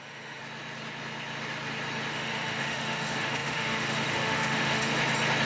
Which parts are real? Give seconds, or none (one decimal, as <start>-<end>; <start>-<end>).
0.4-2.1; 4.9-5.5

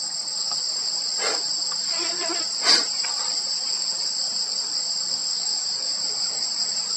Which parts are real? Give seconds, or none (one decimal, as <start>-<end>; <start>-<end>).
0.0-5.3; 6.0-7.0

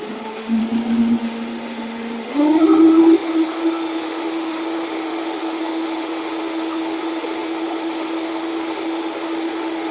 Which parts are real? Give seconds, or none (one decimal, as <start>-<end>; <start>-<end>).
0.6-1.2